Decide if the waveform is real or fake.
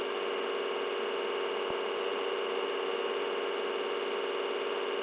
real